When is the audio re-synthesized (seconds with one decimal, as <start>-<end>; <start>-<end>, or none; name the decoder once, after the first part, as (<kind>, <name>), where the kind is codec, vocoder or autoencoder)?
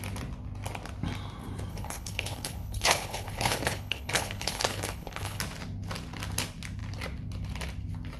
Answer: 1.7-5.4 (codec, HILCodec)